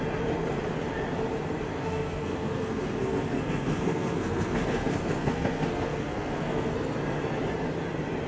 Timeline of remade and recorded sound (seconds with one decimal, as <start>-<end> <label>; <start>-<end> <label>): 0.0-1.7 recorded; 1.7-6.7 remade; 6.7-8.3 recorded